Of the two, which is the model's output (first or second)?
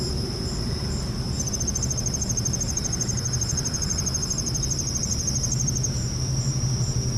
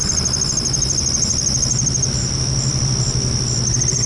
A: first